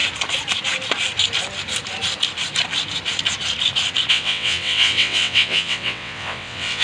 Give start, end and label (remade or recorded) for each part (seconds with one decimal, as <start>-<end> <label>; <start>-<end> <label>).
0.0-4.1 recorded; 4.1-6.8 remade